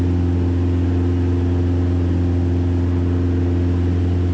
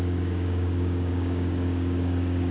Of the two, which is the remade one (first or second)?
second